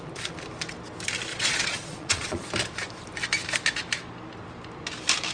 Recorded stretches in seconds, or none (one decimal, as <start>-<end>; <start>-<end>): 0.0-1.3; 2.5-5.3

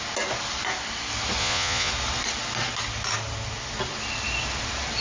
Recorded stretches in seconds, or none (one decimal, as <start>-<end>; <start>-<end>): 0.0-1.4; 1.9-5.0

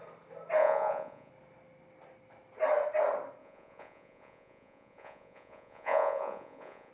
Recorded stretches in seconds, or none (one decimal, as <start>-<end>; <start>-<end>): 0.0-0.6; 1.3-3.4

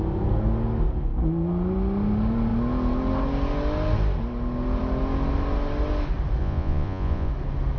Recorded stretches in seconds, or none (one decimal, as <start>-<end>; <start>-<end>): 0.0-6.4; 7.3-7.8